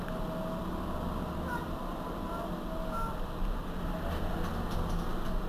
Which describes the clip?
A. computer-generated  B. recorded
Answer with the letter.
B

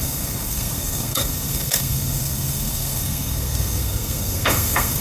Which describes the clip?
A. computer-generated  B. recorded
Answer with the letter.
A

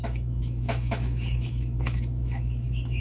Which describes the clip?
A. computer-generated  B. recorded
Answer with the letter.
A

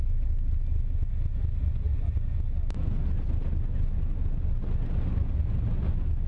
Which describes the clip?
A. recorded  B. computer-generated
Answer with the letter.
A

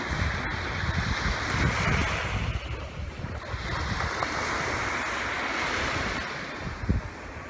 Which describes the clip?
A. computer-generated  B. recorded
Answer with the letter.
B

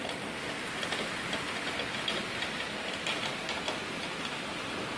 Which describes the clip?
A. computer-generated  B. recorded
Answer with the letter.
B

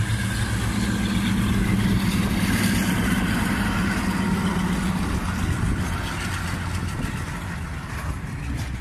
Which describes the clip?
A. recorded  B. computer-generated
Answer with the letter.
A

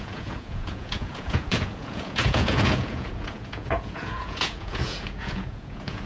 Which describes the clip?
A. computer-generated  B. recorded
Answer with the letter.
A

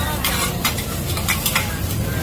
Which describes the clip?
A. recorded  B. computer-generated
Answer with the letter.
A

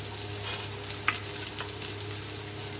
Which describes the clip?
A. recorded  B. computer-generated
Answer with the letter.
A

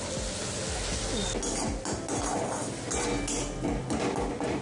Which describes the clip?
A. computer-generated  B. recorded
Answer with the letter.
B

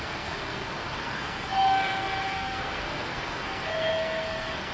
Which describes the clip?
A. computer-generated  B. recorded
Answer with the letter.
A